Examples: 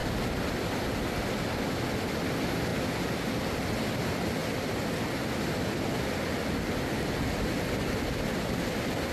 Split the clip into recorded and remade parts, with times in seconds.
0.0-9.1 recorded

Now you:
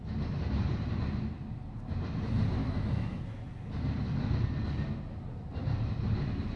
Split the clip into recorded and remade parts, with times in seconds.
0.0-2.6 recorded; 2.6-3.2 remade; 3.2-6.6 recorded

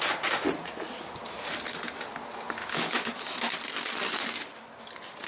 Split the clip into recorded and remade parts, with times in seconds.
0.0-2.6 recorded; 2.6-3.5 remade; 3.5-5.3 recorded